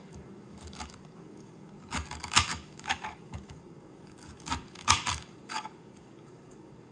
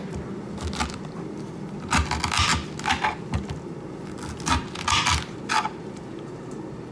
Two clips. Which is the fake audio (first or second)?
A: first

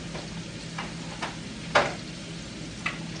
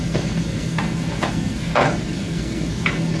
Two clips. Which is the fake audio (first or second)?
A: second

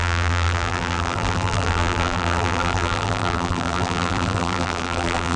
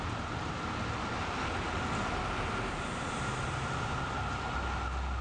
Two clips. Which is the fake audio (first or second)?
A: first